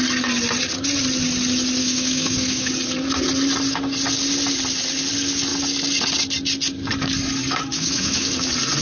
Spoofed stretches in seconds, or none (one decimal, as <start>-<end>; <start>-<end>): 1.8-2.7; 7.7-8.3